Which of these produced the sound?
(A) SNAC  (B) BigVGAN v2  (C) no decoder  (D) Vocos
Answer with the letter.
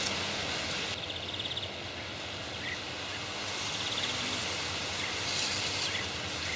C